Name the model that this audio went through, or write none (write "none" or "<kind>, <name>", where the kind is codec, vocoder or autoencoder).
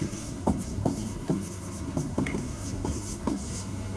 codec, SNAC